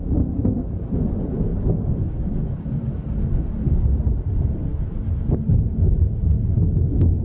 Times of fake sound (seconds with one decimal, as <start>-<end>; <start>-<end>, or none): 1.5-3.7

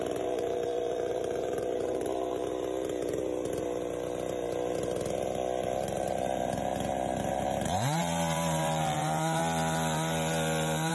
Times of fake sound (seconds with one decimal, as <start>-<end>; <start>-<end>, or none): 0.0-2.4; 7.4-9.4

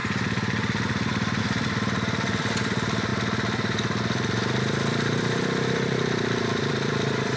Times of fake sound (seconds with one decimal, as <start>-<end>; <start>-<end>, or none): 1.4-3.1; 5.9-7.4